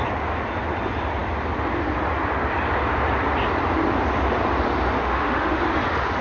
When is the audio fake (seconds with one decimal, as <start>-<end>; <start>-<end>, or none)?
5.0-5.6